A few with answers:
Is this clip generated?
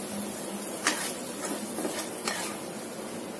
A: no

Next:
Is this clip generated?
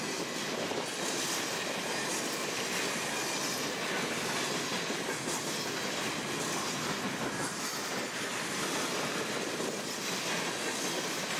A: no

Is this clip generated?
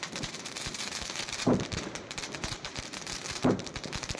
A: yes